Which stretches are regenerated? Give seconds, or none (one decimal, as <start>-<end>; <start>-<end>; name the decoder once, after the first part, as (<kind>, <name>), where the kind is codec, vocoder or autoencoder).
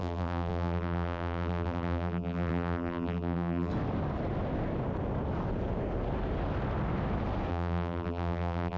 0.0-3.7 (vocoder, BigVGAN v2); 7.5-8.8